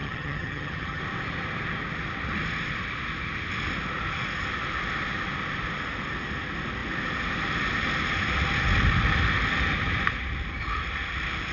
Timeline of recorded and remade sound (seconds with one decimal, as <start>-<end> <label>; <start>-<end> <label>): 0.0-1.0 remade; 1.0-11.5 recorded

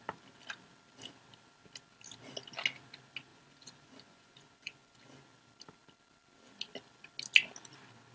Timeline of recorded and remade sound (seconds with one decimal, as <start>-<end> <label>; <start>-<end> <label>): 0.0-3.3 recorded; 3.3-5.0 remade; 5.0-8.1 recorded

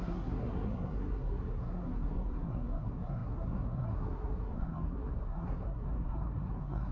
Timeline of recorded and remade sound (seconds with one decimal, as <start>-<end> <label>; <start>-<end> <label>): 0.0-6.9 remade

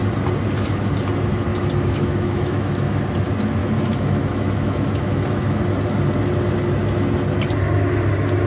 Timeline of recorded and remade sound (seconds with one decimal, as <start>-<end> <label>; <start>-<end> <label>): 0.0-1.5 recorded; 1.5-3.0 remade; 3.0-3.6 recorded; 3.6-5.6 remade; 5.6-8.5 recorded

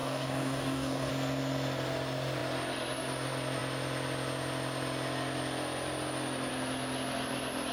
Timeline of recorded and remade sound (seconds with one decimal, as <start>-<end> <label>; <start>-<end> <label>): 0.0-1.1 remade; 1.1-7.7 recorded

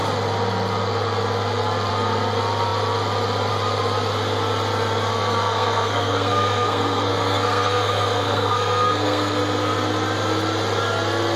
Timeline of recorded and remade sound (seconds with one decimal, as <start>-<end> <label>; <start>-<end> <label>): 0.0-5.1 recorded; 5.1-9.4 remade; 9.4-11.4 recorded